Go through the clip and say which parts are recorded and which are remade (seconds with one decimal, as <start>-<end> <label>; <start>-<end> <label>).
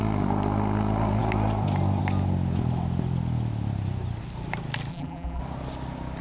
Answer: 0.0-4.9 recorded; 4.9-5.4 remade; 5.4-6.2 recorded